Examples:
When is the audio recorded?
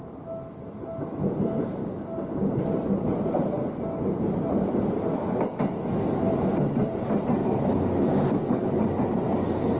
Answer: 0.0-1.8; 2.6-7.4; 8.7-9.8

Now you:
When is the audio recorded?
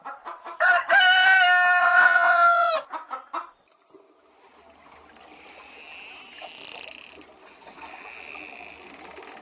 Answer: 0.0-1.8; 2.7-9.4